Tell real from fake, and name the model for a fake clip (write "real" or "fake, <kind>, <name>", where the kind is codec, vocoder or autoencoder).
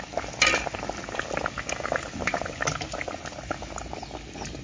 real